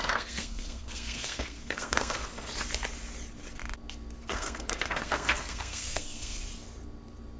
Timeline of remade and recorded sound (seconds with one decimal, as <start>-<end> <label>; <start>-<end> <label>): 0.0-2.2 remade; 2.2-4.2 recorded; 4.2-6.4 remade; 6.4-7.4 recorded